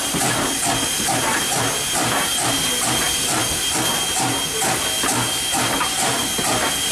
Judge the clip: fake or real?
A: real